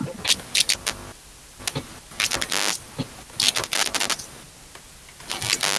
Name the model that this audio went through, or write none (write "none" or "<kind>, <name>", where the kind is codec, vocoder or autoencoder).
none